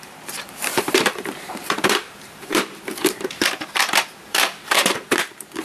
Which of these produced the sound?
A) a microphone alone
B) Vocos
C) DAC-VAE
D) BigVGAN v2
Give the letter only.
D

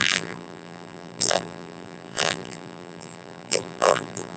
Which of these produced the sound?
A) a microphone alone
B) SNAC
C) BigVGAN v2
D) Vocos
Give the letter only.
C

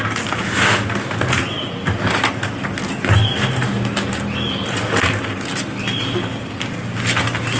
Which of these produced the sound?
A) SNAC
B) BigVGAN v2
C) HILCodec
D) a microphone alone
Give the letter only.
D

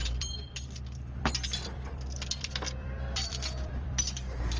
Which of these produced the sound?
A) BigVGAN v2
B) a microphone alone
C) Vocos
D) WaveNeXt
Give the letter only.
A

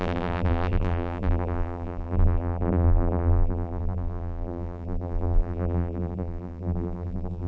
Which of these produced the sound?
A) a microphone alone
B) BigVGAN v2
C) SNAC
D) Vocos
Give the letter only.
B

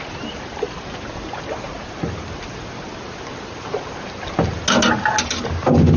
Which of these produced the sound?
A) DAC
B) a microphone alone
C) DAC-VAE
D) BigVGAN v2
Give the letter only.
B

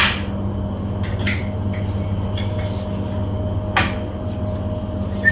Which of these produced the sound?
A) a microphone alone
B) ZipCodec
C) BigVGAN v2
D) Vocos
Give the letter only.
A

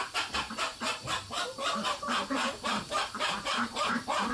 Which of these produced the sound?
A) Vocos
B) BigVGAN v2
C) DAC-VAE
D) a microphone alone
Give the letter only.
B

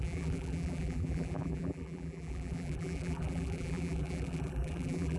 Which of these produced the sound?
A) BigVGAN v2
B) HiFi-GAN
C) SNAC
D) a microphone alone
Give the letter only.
A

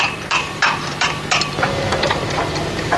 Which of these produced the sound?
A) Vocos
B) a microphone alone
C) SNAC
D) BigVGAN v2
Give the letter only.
D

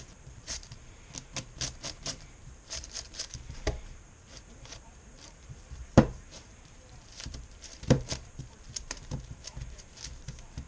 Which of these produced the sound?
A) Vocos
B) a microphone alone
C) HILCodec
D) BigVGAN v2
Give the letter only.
D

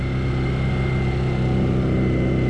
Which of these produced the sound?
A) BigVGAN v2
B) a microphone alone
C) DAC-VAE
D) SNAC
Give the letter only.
B